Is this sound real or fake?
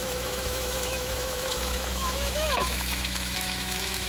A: fake